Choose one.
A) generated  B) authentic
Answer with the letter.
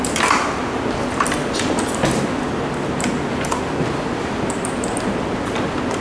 B